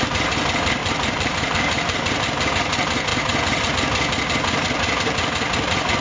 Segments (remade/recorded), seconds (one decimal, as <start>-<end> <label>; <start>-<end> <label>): 0.0-0.8 recorded; 0.8-2.5 remade; 2.5-3.1 recorded; 3.1-3.7 remade; 3.7-6.0 recorded